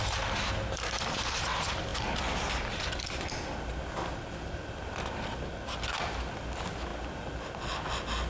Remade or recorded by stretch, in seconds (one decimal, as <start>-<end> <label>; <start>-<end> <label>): 0.0-8.3 recorded